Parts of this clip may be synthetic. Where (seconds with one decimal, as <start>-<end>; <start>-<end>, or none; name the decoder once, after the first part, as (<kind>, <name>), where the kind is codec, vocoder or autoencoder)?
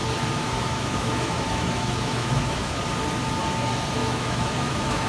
0.4-2.8 (autoencoder, DAC-VAE); 4.0-5.1